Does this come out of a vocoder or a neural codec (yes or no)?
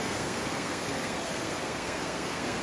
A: yes